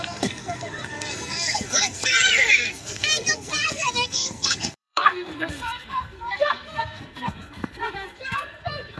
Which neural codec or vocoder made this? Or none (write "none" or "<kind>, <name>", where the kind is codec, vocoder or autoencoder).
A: codec, SNAC